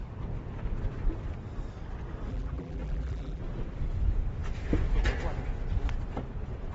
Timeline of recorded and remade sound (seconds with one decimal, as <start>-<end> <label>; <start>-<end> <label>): 0.0-2.3 recorded; 2.3-3.4 remade; 3.4-6.7 recorded